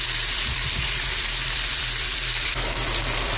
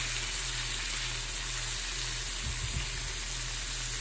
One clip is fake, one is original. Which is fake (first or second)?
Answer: first